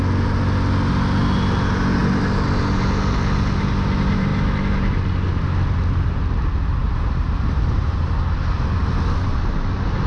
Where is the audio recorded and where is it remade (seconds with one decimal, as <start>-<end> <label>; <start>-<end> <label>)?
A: 0.0-6.8 recorded; 6.8-8.2 remade; 8.2-10.1 recorded

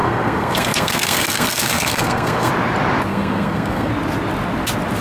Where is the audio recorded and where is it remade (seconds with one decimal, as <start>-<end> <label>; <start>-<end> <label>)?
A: 0.0-2.5 remade; 2.5-3.1 recorded; 3.1-3.9 remade; 3.9-5.0 recorded

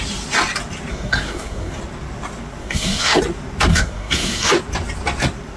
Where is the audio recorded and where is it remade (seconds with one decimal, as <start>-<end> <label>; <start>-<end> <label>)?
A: 0.0-0.9 recorded; 0.9-1.8 remade; 1.8-2.6 recorded; 2.6-3.2 remade; 3.2-3.7 recorded; 3.7-4.5 remade; 4.5-5.6 recorded

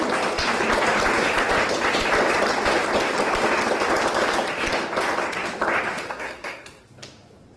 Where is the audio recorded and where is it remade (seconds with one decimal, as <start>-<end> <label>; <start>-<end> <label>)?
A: 0.0-6.1 recorded; 6.1-6.9 remade; 6.9-7.6 recorded

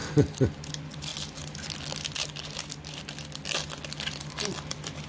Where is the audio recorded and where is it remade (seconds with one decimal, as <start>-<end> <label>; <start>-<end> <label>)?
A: 0.0-0.7 recorded; 0.7-1.1 remade; 1.1-4.2 recorded; 4.2-5.1 remade

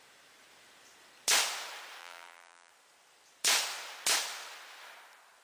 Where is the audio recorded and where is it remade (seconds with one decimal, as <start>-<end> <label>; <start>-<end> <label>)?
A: 0.0-2.0 recorded; 2.0-2.7 remade; 2.7-5.4 recorded

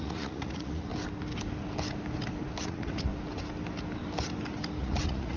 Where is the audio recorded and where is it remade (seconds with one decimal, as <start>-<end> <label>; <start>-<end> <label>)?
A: 0.0-0.9 remade; 0.9-2.6 recorded; 2.6-3.1 remade; 3.1-4.8 recorded; 4.8-5.4 remade

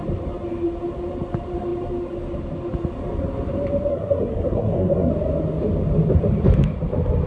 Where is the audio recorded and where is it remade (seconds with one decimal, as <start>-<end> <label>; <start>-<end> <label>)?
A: 0.0-3.9 recorded; 3.9-5.1 remade; 5.1-7.3 recorded